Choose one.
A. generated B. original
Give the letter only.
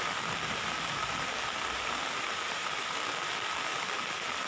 B